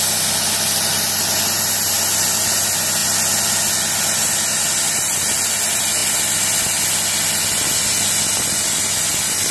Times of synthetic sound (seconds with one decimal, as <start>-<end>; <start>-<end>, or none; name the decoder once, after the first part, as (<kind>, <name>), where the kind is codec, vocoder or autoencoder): none